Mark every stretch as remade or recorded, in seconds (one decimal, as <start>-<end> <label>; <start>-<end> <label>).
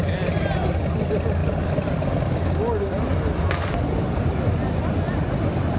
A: 0.0-5.8 recorded